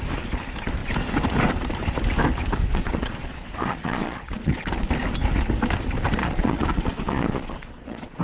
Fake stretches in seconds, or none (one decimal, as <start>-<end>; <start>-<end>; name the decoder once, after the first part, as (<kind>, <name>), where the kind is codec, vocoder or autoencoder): 2.7-4.6 (vocoder, Vocos); 6.2-8.2